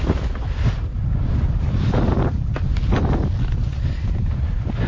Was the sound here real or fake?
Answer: real